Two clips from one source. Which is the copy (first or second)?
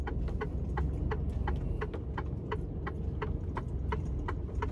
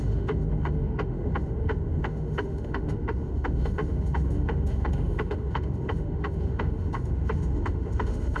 second